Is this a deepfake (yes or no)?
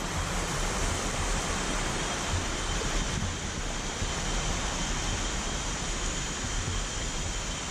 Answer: yes